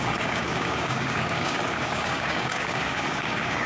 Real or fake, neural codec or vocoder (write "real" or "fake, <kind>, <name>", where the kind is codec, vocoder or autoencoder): fake, codec, DAC